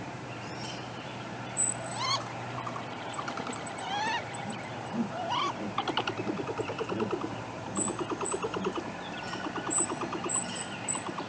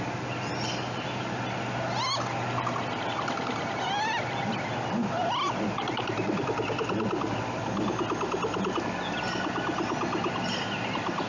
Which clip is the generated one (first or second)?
first